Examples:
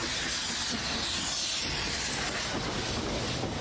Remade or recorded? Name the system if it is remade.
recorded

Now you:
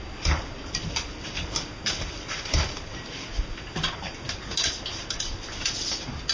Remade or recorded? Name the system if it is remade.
recorded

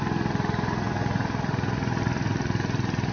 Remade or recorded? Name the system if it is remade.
recorded